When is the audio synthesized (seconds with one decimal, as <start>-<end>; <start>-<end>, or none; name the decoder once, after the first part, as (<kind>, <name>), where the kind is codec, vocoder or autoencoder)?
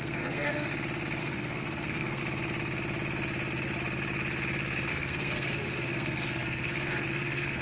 0.0-0.7 (codec, SNAC); 1.2-2.2; 4.9-7.6